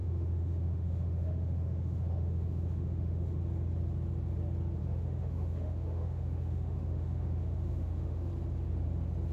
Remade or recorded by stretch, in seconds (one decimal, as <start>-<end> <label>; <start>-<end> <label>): 0.0-3.4 remade; 3.4-4.8 recorded; 4.8-8.3 remade; 8.3-9.3 recorded